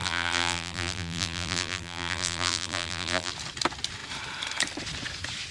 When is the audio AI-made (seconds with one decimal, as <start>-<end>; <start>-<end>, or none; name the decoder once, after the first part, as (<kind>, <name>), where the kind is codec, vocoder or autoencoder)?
0.0-3.3 (vocoder, BigVGAN v2)